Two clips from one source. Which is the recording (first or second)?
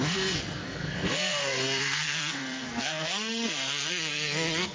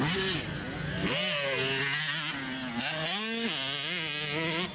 second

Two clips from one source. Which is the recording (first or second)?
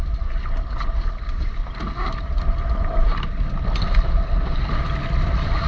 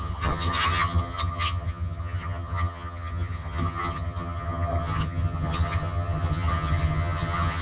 first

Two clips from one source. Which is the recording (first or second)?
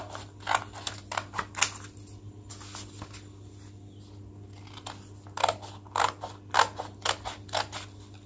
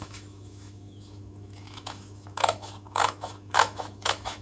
first